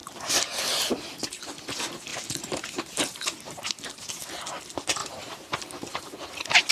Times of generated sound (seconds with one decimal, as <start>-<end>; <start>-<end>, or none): 0.0-0.6; 2.1-3.6; 5.0-6.7